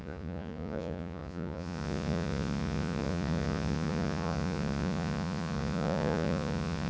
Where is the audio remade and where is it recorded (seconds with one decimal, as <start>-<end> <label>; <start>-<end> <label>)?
0.0-6.9 remade